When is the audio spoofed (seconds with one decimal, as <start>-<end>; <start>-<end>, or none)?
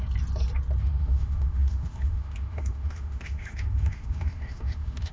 0.8-5.1